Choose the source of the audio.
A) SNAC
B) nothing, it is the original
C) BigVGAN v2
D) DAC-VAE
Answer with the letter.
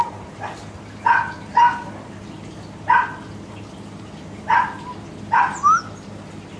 B